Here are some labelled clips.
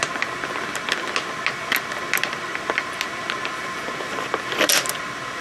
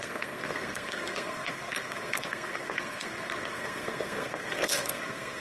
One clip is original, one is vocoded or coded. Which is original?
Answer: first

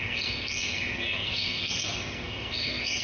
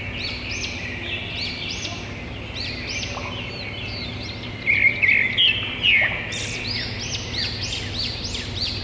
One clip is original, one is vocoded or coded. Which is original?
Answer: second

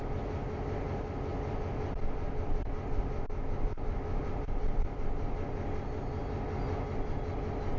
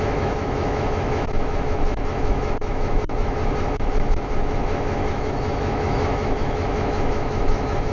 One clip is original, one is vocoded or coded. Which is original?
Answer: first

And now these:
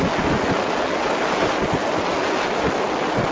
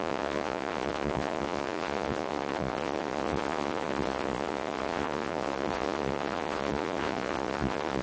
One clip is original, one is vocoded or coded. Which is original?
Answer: first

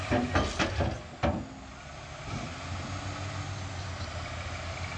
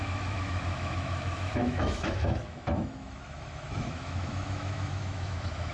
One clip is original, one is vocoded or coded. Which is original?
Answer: first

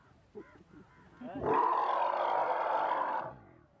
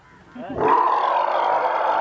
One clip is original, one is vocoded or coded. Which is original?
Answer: first